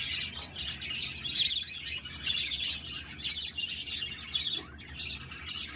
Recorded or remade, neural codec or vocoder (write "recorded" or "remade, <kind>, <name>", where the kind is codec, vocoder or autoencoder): recorded